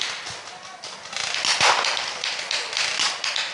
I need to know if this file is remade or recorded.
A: recorded